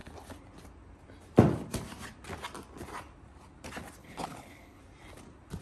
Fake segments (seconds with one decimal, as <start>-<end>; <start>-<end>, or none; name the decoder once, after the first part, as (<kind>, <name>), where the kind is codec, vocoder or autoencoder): 4.0-4.8 (codec, HILCodec)